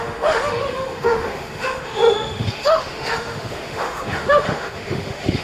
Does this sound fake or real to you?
fake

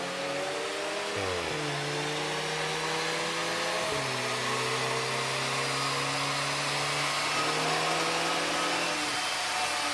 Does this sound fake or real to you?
real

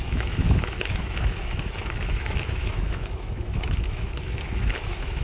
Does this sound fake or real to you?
fake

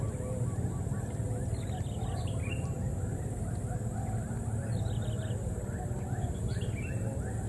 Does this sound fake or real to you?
real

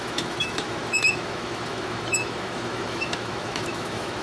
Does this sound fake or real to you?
fake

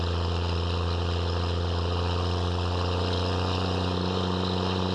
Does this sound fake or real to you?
real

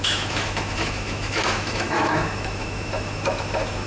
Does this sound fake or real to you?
fake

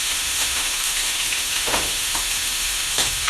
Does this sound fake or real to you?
fake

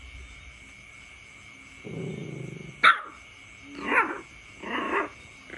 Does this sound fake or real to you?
real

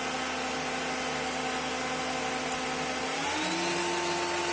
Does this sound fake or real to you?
real